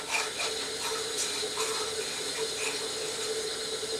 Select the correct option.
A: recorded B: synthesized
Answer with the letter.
A